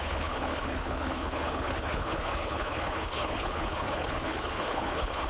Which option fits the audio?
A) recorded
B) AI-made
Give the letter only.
B